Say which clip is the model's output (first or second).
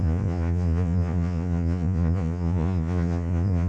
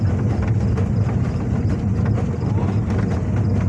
first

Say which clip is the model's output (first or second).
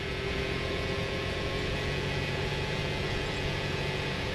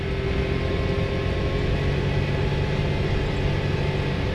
first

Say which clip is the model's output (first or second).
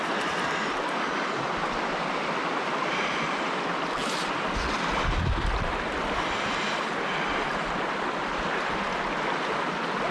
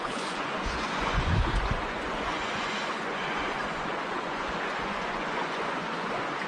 second